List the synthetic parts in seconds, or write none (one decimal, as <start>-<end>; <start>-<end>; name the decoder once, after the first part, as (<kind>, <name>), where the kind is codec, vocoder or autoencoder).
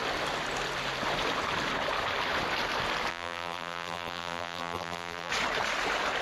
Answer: 3.1-5.3 (vocoder, BigVGAN v2)